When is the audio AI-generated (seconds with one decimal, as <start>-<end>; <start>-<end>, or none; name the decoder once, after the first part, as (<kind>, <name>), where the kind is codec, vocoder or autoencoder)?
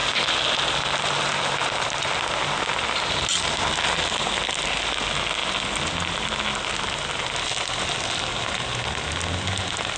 none